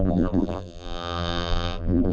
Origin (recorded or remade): remade